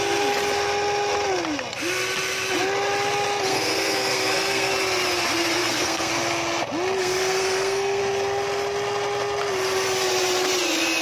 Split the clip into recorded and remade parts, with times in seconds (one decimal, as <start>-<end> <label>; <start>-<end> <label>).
0.0-3.5 recorded; 3.5-4.7 remade; 4.7-5.5 recorded; 5.5-6.1 remade; 6.1-7.0 recorded; 7.0-8.0 remade; 8.0-11.0 recorded